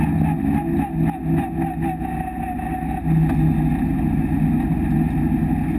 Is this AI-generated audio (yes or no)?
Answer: no